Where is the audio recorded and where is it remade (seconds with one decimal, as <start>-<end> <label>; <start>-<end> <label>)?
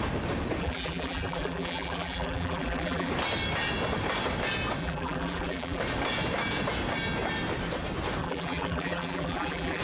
0.0-0.6 recorded; 0.6-3.1 remade; 3.1-4.8 recorded; 4.8-5.8 remade; 5.8-8.2 recorded; 8.2-9.8 remade